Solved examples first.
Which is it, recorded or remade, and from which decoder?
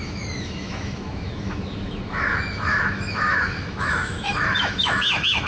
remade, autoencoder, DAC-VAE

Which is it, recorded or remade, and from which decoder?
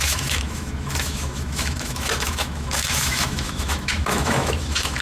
remade, autoencoder, DAC-VAE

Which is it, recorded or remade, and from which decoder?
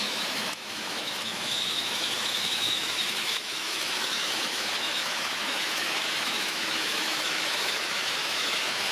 remade, autoencoder, DAC-VAE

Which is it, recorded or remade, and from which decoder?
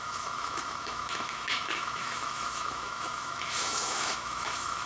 remade, autoencoder, DAC-VAE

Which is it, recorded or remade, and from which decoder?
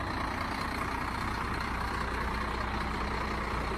recorded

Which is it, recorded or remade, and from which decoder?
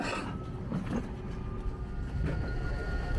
recorded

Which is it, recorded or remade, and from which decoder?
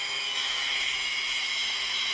remade, autoencoder, DAC-VAE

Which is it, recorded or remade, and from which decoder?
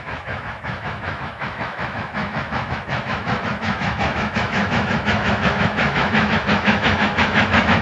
remade, autoencoder, DAC-VAE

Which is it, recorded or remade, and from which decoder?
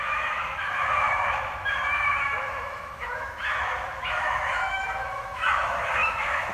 remade, autoencoder, DAC-VAE